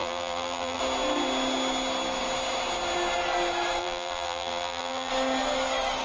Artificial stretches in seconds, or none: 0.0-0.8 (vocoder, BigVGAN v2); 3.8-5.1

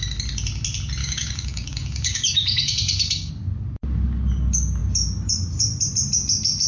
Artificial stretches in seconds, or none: 1.0-3.3 (codec, DAC)

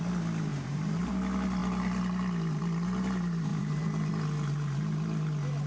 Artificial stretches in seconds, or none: 0.5-1.1 (vocoder, BigVGAN v2); 3.5-4.1

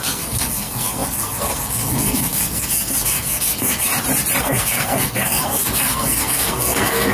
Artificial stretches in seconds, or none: 0.0-3.9 (codec, SNAC); 4.4-7.1

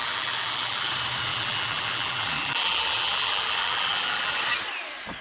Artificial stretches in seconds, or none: 0.0-0.9 (vocoder, BigVGAN v2); 1.3-4.4

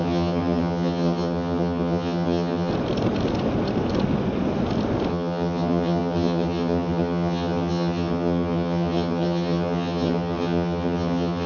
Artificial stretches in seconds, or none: 0.0-2.7 (vocoder, HiFi-GAN); 5.1-11.5